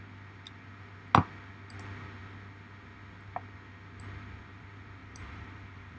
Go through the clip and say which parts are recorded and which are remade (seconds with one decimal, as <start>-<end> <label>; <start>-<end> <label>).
0.0-5.0 recorded; 5.0-6.0 remade